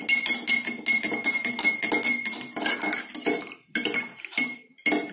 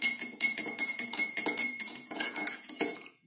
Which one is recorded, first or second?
first